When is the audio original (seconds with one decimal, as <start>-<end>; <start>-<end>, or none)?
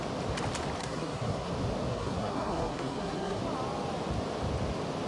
0.0-0.8; 1.5-1.9; 3.4-5.1